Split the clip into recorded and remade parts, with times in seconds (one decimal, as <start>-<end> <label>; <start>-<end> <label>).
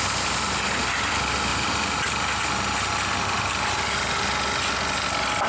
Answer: 0.0-5.5 recorded